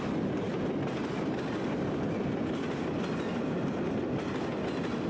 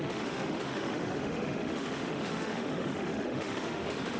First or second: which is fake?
second